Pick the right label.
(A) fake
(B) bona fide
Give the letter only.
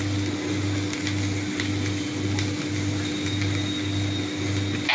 B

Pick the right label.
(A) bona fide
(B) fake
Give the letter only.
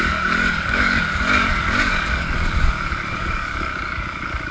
B